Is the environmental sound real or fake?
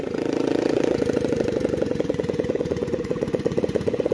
fake